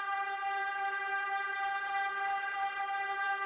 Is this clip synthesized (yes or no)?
no